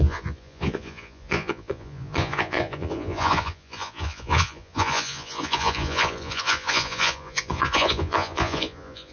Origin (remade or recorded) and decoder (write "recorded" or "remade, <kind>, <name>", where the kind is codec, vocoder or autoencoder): remade, vocoder, Vocos